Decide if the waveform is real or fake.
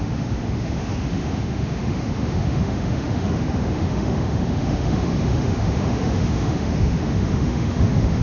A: fake